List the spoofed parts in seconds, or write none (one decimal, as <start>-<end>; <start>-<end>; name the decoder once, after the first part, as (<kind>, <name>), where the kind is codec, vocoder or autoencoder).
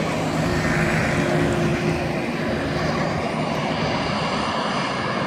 none